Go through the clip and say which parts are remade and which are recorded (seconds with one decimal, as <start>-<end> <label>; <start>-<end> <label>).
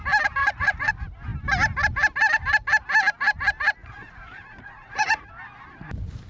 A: 0.0-0.4 recorded; 0.4-0.9 remade; 0.9-3.8 recorded; 3.8-5.3 remade; 5.3-6.3 recorded